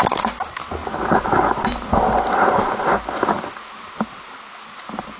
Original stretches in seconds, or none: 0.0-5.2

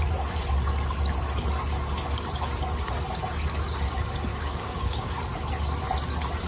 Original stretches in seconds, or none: 0.0-4.3; 5.1-6.5

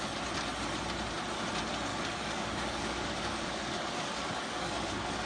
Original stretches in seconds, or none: 0.0-1.9

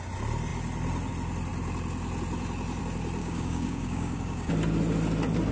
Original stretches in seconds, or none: 0.0-3.2; 4.5-5.5

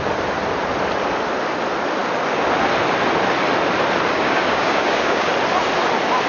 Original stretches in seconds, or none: 0.0-4.1; 5.3-6.3

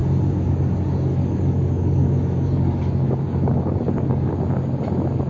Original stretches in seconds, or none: 0.0-1.1; 4.3-5.3

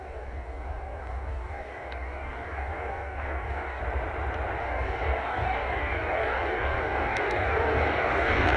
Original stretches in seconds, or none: 3.8-4.6